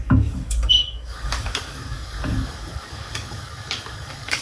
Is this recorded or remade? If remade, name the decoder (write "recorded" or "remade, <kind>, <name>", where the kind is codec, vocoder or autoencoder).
remade, codec, DAC